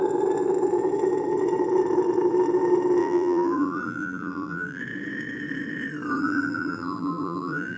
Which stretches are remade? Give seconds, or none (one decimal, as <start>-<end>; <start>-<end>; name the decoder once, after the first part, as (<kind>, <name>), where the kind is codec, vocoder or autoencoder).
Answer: 3.0-4.8 (vocoder, BigVGAN v2); 6.2-7.8